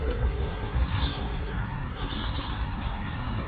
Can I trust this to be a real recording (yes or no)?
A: no